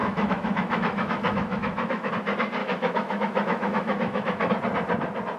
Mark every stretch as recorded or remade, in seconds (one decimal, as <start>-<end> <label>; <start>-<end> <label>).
0.0-2.1 remade; 2.1-2.6 recorded; 2.6-4.5 remade; 4.5-5.4 recorded

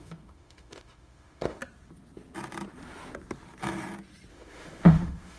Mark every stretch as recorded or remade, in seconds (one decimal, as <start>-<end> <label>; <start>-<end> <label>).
0.0-1.6 remade; 1.6-4.3 recorded; 4.3-5.4 remade